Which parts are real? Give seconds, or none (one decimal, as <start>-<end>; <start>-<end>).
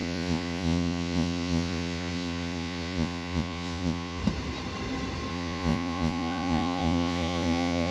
4.2-5.3